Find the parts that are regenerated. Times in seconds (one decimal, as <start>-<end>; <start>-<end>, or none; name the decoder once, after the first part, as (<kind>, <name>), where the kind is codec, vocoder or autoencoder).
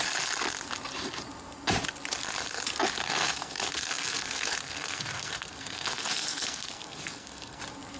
3.0-7.6 (codec, SNAC)